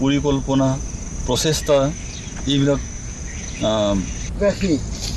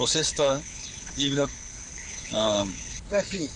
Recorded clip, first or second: first